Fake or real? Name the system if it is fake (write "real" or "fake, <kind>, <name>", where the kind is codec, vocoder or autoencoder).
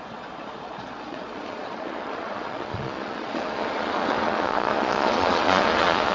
fake, vocoder, Vocos